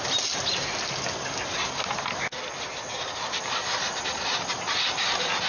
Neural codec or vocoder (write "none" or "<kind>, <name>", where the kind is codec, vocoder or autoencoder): none